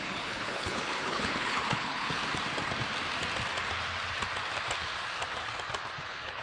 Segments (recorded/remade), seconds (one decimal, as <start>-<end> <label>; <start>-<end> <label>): 0.0-2.2 remade; 2.2-6.0 recorded; 6.0-6.4 remade